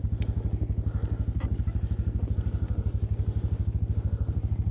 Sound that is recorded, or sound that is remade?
recorded